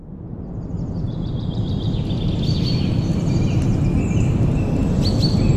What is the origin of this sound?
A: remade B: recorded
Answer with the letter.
B